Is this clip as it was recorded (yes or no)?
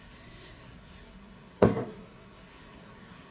no